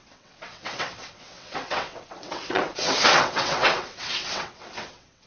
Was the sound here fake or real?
fake